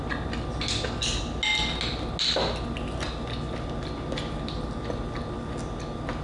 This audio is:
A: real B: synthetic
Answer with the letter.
A